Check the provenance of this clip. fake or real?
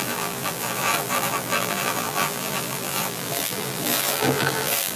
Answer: fake